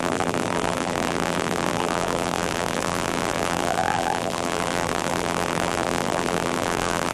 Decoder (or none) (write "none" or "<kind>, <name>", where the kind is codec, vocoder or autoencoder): vocoder, BigVGAN v2